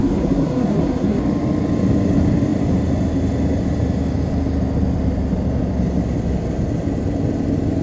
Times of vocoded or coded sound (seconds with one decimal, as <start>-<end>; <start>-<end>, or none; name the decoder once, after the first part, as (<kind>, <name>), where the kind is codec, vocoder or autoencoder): 0.0-1.2 (codec, SNAC)